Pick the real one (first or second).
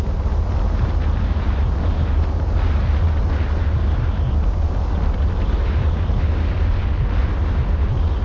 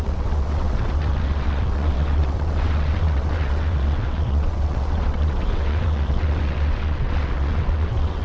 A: first